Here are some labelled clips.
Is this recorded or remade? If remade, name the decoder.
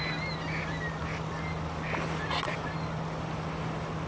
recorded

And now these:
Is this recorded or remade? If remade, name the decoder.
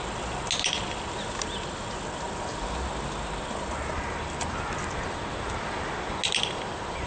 recorded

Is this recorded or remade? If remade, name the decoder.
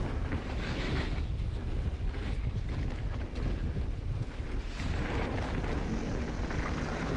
recorded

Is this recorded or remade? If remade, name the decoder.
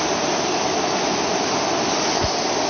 recorded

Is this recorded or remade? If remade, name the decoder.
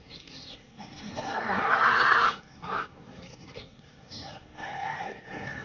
remade, codec, SNAC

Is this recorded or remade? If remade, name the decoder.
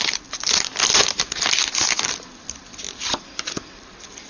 recorded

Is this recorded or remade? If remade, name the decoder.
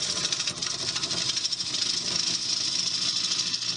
recorded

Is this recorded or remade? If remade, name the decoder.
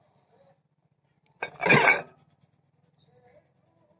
recorded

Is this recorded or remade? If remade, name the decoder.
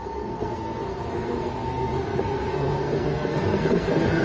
remade, codec, SNAC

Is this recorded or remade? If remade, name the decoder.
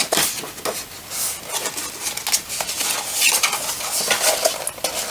recorded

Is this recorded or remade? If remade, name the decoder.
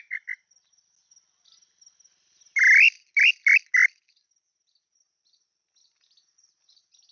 recorded